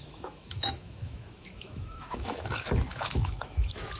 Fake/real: fake